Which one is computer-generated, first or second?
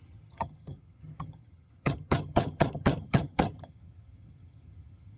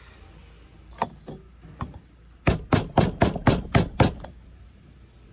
first